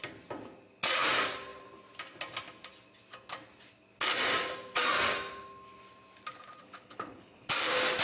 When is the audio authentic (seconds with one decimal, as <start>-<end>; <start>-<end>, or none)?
0.0-6.6; 7.5-8.0